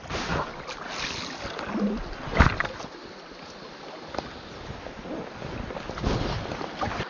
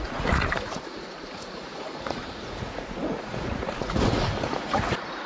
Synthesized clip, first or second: second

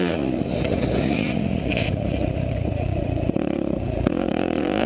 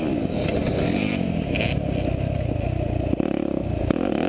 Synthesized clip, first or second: first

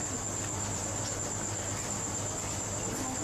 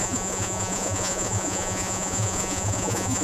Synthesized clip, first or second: second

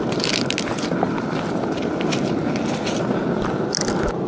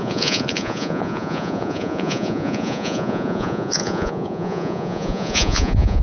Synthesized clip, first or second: second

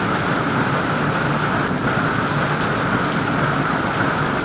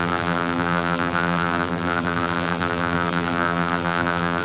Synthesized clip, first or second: second